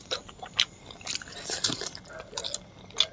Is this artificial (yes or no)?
no